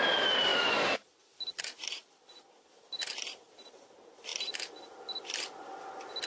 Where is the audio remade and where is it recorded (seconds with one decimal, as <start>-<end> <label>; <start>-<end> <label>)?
0.0-6.3 recorded